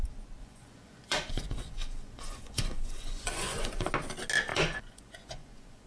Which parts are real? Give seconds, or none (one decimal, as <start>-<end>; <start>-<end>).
0.0-0.4; 3.9-4.5